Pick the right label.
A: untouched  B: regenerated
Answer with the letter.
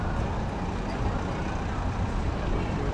A